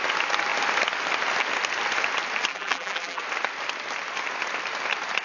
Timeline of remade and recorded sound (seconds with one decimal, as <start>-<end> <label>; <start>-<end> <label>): 0.0-2.5 recorded; 2.5-3.2 remade; 3.2-5.2 recorded